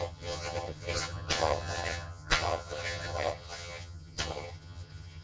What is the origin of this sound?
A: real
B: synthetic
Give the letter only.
B